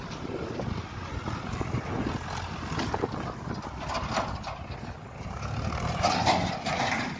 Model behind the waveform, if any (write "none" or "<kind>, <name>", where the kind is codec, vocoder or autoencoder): none